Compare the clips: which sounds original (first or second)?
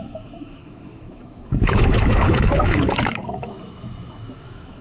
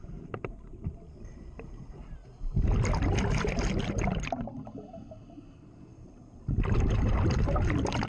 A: second